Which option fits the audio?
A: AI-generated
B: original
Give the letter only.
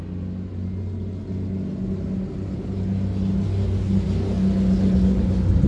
B